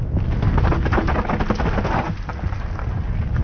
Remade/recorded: recorded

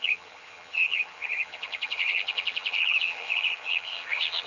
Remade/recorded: remade